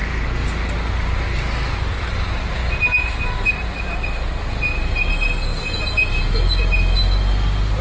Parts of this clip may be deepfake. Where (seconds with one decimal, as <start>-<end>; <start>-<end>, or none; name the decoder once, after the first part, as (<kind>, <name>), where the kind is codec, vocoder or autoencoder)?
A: none

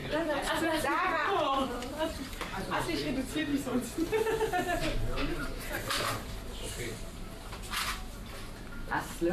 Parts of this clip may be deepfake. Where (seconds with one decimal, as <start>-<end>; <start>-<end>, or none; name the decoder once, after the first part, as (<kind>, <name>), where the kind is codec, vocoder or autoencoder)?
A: 0.0-3.5 (vocoder, BigVGAN v2); 5.3-9.3

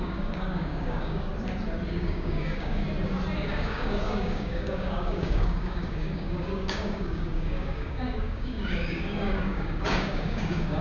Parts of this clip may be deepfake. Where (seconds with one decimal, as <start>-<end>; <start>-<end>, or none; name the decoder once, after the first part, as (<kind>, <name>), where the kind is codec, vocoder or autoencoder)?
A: 0.0-1.3 (codec, DAC); 1.9-2.8; 3.5-10.8

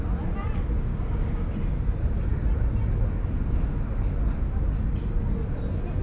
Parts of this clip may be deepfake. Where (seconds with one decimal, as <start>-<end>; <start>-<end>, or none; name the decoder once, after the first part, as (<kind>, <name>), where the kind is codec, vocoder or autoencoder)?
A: 0.9-1.5 (codec, DAC)

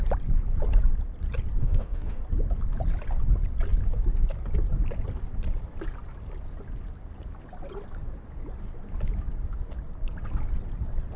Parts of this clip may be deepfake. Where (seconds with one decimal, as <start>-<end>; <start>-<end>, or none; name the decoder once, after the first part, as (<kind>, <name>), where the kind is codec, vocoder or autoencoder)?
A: 1.6-2.2 (autoencoder, DAC-VAE)

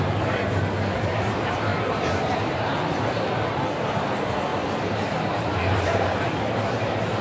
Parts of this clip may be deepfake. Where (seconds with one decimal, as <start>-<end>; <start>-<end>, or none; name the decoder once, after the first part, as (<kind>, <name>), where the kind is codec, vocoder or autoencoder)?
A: 0.0-7.2 (vocoder, BigVGAN v2)